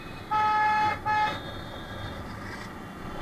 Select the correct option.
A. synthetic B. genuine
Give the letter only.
B